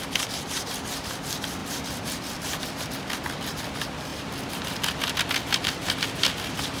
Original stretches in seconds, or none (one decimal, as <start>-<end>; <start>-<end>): 0.0-1.6; 2.8-6.8